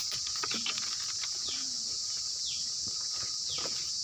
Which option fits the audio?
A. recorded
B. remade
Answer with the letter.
B